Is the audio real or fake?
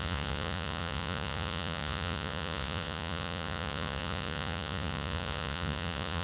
fake